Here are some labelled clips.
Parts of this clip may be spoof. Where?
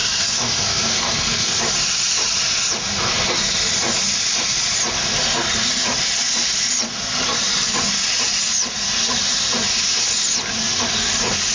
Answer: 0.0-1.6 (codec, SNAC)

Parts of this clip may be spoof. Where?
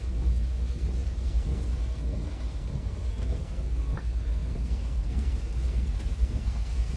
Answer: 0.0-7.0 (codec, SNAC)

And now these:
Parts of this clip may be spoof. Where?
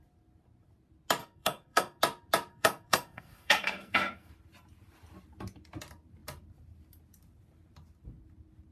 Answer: 1.2-2.0 (codec, SNAC); 2.5-4.3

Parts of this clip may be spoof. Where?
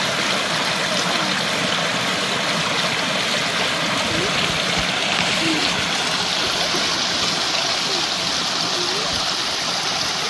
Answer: none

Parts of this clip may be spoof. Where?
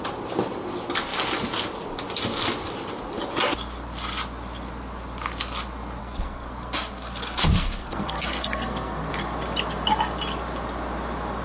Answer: 6.0-9.1 (codec, SNAC)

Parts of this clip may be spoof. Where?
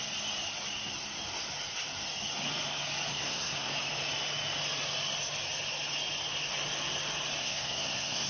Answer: 3.1-3.7 (codec, SNAC); 7.4-8.3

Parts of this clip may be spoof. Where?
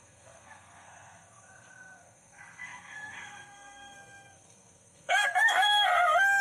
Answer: 0.0-6.4 (codec, SNAC)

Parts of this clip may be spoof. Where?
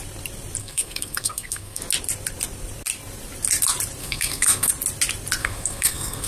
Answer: 0.6-1.8 (codec, SNAC); 4.0-4.7; 5.4-6.3